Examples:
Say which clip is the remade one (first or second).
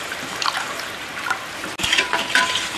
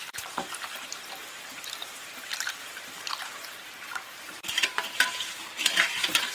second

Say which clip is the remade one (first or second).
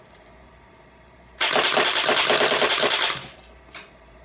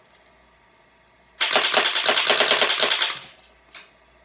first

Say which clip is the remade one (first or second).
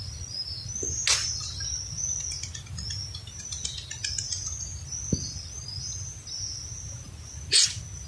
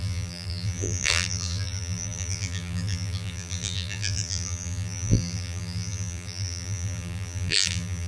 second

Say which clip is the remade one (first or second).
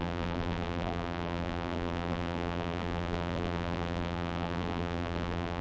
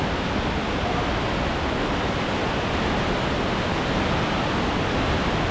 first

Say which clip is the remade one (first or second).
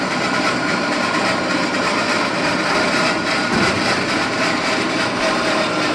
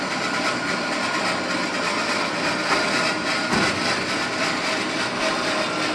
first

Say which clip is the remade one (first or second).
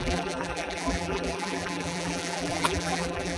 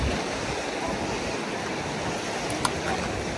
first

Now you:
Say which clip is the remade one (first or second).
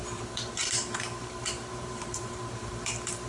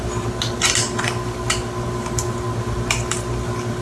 first